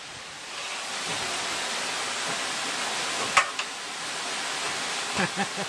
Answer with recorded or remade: recorded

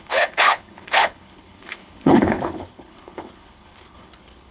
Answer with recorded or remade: remade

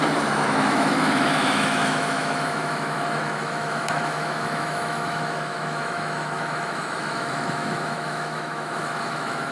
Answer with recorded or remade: remade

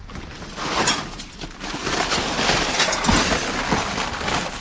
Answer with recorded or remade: recorded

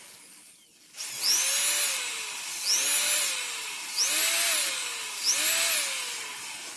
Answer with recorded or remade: recorded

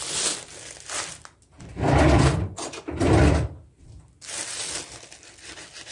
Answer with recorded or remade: recorded